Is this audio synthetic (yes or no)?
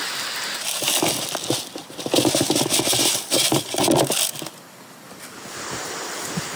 no